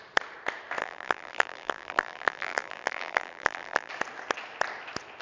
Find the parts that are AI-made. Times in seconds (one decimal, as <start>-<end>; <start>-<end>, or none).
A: 0.8-3.9